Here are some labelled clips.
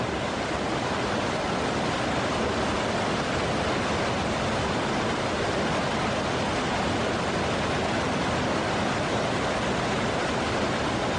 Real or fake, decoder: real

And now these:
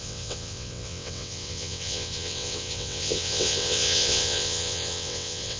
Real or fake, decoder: fake, vocoder, WaveNeXt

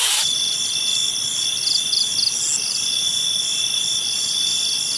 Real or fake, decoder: real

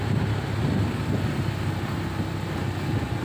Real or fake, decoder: real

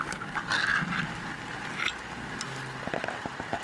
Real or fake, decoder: real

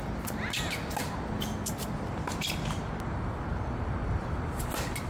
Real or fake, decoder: real